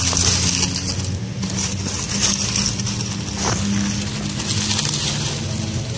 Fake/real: real